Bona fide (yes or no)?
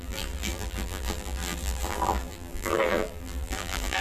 no